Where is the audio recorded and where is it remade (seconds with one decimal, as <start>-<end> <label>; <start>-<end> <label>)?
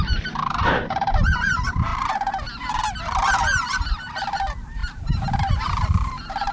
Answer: 0.0-1.9 remade; 1.9-3.0 recorded; 3.0-4.8 remade; 4.8-5.4 recorded; 5.4-6.5 remade